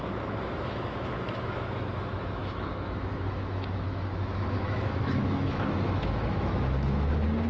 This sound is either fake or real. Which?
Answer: fake